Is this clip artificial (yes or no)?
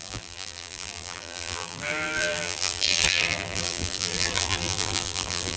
yes